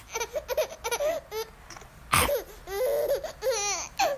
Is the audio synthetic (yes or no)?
no